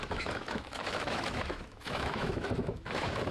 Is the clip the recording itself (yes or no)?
no